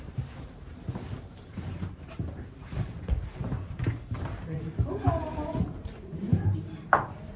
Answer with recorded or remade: remade